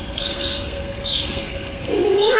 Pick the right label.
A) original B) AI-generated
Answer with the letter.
B